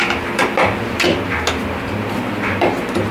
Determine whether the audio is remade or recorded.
recorded